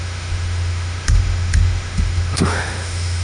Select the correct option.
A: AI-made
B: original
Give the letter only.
A